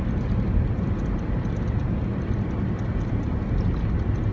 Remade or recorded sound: recorded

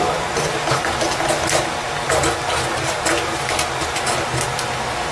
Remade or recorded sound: recorded